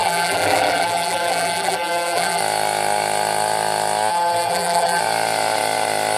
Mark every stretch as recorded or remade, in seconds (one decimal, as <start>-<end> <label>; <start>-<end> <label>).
0.0-2.4 remade; 2.4-4.1 recorded; 4.1-5.0 remade; 5.0-6.2 recorded